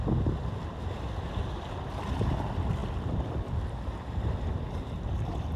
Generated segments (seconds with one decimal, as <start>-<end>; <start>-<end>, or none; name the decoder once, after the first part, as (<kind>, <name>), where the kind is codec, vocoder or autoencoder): none

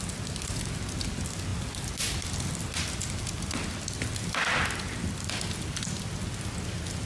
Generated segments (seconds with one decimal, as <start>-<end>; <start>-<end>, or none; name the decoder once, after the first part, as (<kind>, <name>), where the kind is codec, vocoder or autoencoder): none

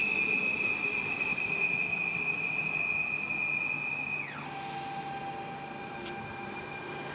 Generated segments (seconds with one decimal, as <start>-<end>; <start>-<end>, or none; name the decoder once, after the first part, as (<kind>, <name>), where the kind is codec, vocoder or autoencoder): 1.1-2.6 (vocoder, BigVGAN v2); 5.7-7.1

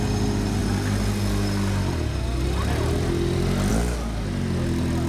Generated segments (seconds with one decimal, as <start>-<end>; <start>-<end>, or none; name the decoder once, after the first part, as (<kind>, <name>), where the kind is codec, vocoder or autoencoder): none

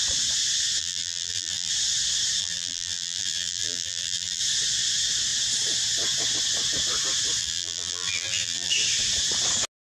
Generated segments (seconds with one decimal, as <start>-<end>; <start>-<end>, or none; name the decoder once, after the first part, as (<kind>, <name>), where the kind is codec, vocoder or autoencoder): 0.8-1.7 (vocoder, BigVGAN v2); 2.4-4.4; 7.4-8.7